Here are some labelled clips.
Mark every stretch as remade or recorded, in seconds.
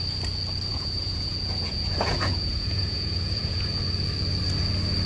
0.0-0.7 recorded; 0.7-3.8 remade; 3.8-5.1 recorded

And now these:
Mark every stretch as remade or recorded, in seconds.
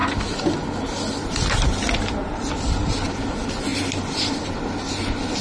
0.0-5.4 recorded